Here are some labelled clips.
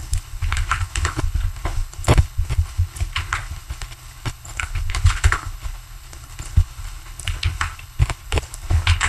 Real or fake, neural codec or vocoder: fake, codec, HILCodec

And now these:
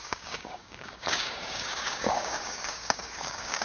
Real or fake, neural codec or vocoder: fake, codec, DAC